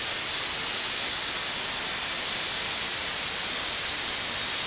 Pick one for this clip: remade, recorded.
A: recorded